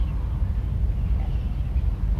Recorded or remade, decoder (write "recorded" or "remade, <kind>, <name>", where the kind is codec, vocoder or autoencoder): recorded